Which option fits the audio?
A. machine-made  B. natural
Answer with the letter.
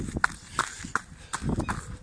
B